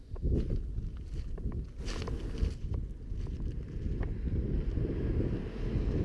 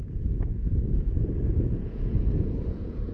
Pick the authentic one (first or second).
first